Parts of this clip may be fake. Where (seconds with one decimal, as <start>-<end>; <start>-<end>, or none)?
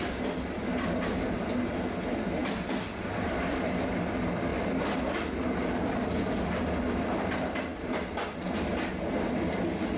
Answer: none